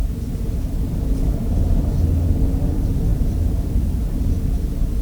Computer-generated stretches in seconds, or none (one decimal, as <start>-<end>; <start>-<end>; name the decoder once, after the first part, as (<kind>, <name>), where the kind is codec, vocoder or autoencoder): none